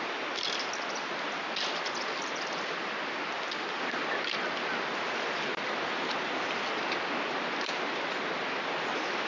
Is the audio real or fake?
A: real